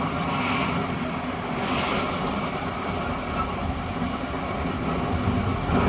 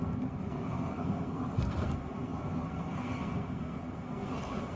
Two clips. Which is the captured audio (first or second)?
first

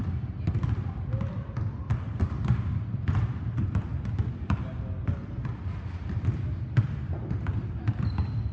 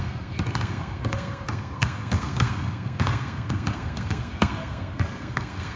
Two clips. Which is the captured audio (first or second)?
first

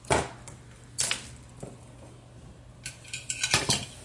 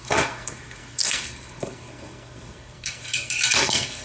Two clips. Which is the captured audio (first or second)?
first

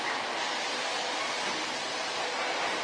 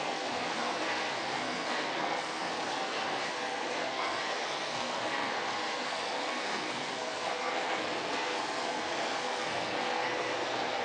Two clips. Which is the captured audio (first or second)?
first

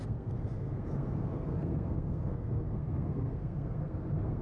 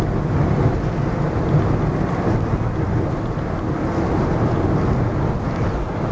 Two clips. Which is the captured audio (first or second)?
second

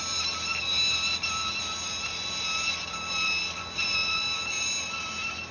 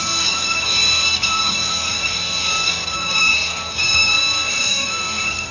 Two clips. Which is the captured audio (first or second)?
first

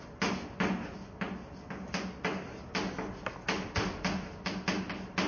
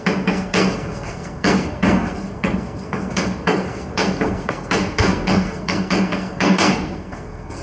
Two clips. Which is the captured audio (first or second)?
first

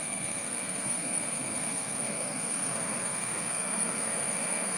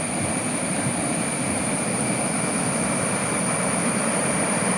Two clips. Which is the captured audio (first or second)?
second